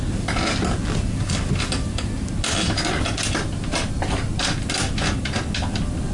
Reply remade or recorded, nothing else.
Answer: recorded